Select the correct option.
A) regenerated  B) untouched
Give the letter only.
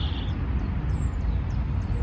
B